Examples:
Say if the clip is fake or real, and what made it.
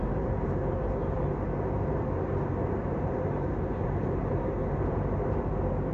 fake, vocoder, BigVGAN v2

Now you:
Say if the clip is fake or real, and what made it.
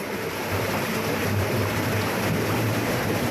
fake, vocoder, BigVGAN v2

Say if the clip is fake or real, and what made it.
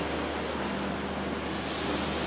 real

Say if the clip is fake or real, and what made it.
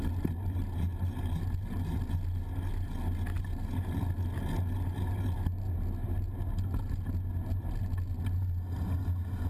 real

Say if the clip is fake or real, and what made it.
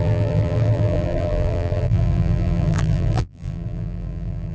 fake, vocoder, BigVGAN v2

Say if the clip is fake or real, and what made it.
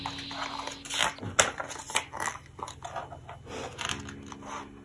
real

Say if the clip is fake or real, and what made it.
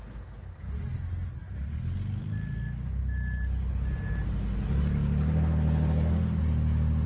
real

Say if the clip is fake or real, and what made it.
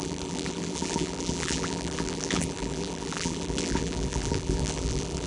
fake, vocoder, BigVGAN v2